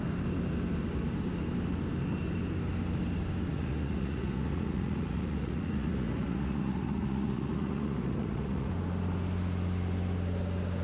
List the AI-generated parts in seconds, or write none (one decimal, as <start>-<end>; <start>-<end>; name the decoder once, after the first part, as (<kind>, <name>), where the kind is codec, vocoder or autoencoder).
3.5-8.7 (vocoder, Vocos)